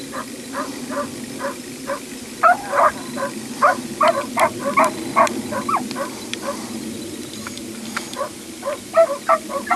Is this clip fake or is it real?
real